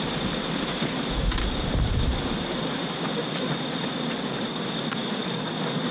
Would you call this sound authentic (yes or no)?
yes